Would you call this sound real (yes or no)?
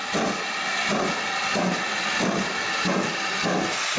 yes